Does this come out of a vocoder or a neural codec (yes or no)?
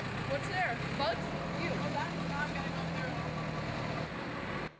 no